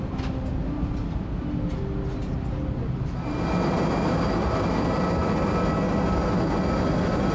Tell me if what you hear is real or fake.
real